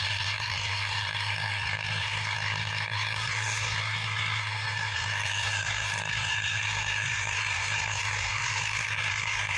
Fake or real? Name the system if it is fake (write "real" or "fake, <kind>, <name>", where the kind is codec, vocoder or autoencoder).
fake, codec, SNAC